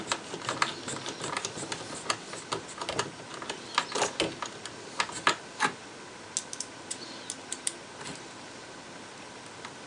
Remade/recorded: recorded